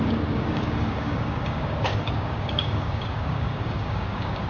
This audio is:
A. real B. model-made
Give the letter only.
B